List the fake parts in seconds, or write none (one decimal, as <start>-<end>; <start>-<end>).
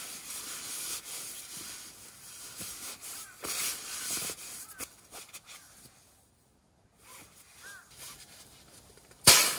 2.5-4.8